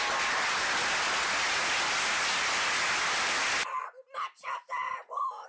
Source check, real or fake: real